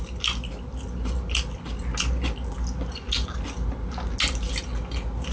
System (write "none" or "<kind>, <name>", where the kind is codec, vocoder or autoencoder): none